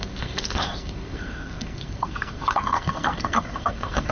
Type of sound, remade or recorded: remade